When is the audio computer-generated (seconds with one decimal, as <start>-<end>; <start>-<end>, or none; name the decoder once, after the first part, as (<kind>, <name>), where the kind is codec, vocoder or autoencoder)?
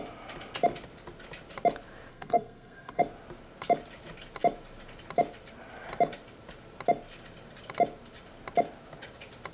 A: 2.1-3.0 (codec, SNAC)